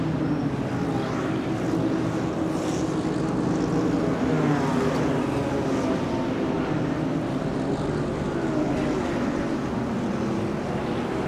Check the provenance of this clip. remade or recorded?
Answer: recorded